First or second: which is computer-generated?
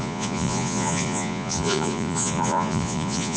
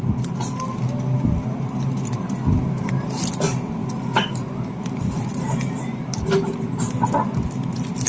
first